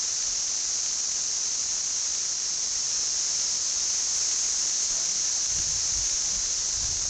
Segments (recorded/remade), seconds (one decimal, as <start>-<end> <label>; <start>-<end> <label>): 0.0-7.1 recorded